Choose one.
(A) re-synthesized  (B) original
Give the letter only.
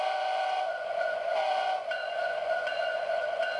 A